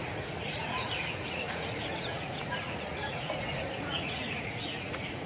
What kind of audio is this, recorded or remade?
remade